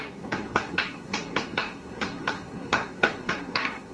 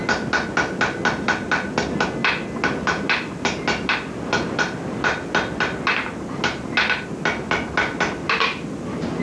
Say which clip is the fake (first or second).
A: first